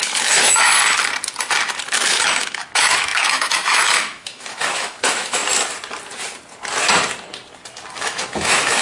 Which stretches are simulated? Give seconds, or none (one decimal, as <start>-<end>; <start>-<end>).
0.0-0.7; 2.1-5.4; 8.0-8.8